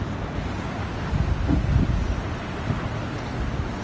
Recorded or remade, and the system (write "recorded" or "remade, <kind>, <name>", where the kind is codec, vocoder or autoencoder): recorded